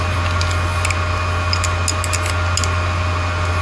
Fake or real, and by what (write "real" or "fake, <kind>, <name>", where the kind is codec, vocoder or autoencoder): real